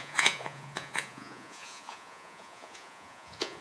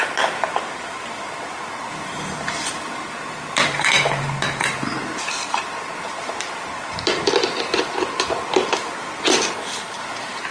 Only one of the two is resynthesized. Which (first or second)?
first